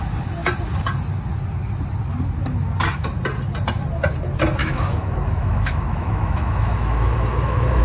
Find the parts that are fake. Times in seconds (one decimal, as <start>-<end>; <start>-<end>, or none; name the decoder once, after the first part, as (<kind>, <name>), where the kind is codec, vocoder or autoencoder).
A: 4.6-7.8 (autoencoder, DAC-VAE)

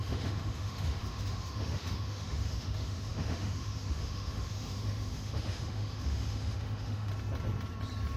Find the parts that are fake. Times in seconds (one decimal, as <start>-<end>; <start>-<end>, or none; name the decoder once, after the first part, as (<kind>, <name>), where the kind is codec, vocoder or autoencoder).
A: 0.0-7.1 (autoencoder, DAC-VAE)

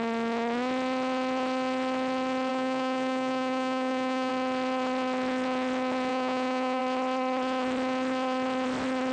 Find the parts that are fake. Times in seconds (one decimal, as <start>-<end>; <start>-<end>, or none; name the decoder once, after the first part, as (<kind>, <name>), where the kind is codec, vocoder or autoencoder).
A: 2.5-4.3 (autoencoder, DAC-VAE); 6.1-6.8

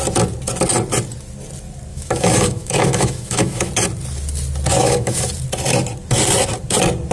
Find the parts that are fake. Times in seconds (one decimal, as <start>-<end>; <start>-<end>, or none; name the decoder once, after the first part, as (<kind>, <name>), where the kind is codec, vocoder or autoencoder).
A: 1.9-3.7 (autoencoder, DAC-VAE); 4.7-5.2

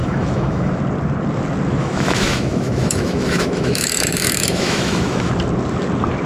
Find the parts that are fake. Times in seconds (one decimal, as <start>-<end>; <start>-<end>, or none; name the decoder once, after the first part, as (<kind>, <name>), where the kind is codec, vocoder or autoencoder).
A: 0.0-0.7 (autoencoder, DAC-VAE); 1.8-5.3

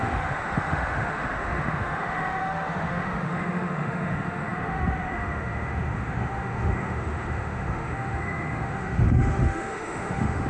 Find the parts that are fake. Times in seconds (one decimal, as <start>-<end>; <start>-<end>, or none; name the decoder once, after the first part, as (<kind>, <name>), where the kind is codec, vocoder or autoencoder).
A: 0.0-10.5 (autoencoder, DAC-VAE)